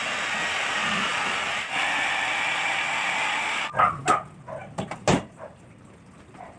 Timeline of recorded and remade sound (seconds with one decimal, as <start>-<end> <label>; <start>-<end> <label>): 0.0-4.6 recorded; 4.6-5.5 remade; 5.5-6.6 recorded